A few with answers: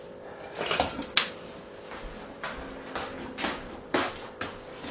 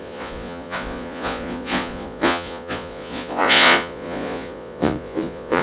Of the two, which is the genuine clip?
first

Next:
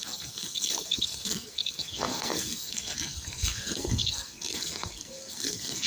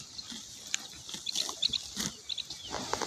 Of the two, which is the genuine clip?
second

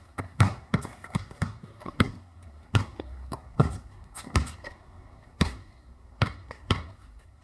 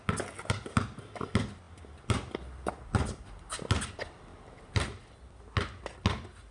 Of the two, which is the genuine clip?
second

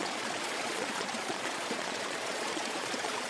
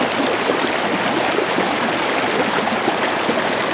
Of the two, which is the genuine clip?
second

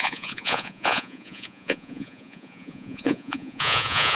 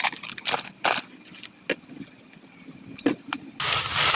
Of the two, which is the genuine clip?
second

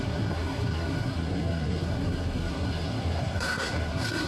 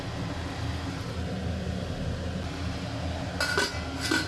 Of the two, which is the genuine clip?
second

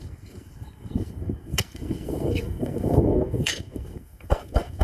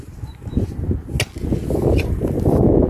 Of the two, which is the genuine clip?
second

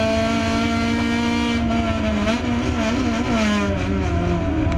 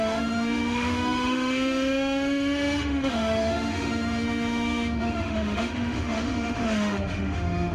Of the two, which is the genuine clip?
first